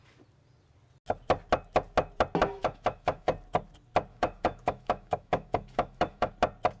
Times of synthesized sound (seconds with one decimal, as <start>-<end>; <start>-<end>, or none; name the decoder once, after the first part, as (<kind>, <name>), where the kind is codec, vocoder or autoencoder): 2.6-3.3 (autoencoder, DAC-VAE); 4.1-6.3